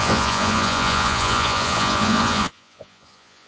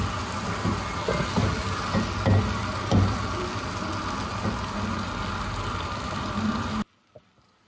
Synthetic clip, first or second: first